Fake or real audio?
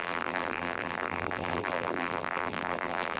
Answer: fake